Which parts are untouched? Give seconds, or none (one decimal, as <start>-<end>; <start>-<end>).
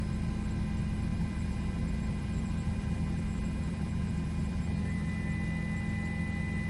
0.0-1.1; 5.1-6.7